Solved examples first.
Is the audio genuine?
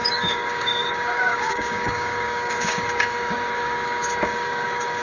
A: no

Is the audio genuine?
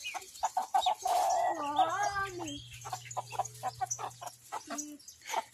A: yes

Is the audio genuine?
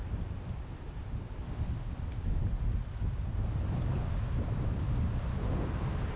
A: yes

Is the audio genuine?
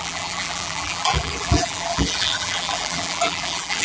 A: no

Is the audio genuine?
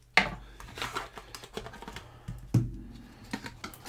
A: yes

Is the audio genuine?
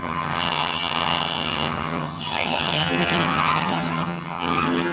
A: no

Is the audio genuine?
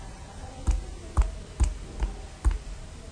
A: yes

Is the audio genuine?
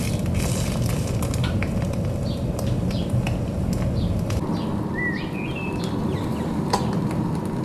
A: yes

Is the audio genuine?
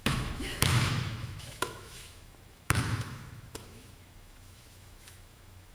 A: no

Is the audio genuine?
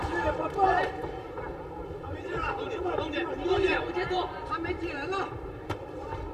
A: no